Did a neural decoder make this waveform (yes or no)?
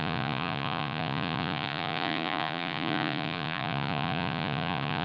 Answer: yes